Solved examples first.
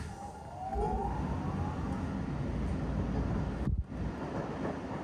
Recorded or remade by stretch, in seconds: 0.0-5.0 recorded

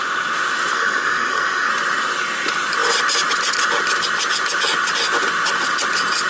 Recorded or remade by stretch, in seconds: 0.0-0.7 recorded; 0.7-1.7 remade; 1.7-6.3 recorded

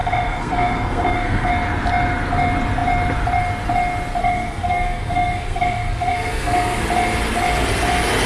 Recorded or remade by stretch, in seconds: 0.0-1.5 remade; 1.5-4.2 recorded; 4.2-6.8 remade; 6.8-8.3 recorded